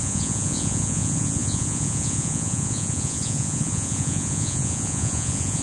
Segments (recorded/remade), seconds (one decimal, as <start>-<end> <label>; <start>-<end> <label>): 0.0-5.6 remade